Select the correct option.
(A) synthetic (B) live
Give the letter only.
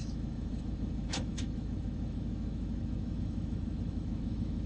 A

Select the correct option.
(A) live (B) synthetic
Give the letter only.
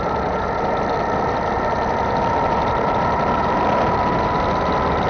A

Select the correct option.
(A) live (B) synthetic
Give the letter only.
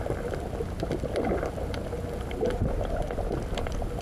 A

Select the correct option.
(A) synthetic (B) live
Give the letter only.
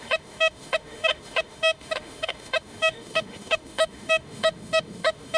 A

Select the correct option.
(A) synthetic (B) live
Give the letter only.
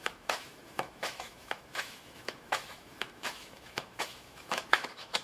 A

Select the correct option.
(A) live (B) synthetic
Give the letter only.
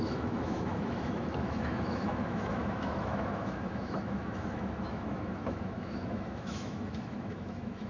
B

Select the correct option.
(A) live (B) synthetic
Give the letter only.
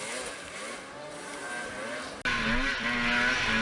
A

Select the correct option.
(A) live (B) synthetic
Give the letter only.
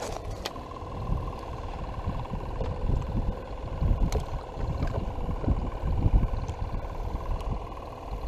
A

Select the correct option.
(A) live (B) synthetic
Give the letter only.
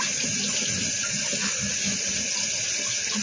A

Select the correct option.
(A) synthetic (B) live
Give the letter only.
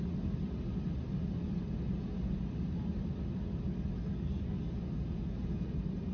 B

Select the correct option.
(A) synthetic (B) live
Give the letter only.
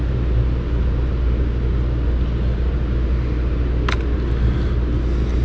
B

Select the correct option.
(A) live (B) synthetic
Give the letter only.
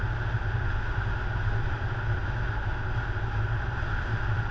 A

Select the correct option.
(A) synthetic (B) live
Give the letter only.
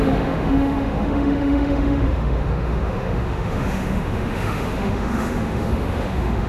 A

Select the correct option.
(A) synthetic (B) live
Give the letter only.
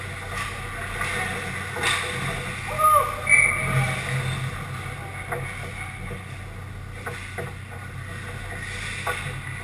B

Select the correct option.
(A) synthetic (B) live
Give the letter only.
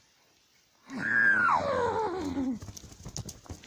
B